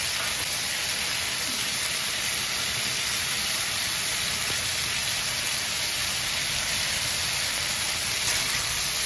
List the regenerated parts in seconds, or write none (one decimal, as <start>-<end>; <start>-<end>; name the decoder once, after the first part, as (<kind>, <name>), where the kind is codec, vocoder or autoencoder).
none